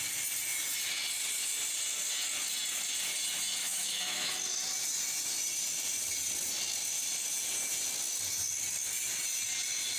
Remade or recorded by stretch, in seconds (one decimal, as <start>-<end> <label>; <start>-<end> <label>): 0.0-3.6 recorded; 3.6-4.3 remade; 4.3-10.0 recorded